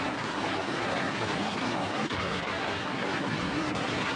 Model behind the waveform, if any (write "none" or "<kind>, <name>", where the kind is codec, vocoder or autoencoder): codec, SNAC